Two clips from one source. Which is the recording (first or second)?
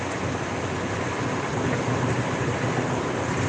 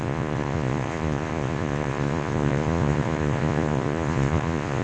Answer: first